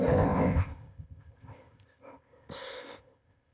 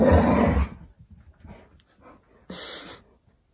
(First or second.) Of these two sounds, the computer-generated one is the first